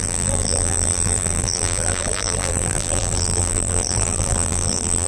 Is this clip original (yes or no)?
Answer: no